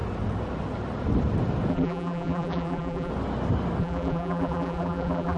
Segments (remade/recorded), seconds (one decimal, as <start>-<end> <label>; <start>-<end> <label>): 0.0-1.7 recorded; 1.7-3.1 remade; 3.1-3.8 recorded; 3.8-5.4 remade